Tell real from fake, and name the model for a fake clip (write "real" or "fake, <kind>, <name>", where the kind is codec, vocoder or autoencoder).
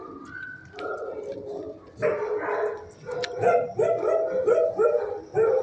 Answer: real